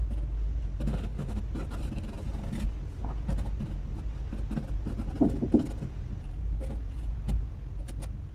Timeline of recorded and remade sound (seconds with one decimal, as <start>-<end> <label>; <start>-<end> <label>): 0.0-0.9 recorded; 0.9-1.4 remade; 1.4-8.3 recorded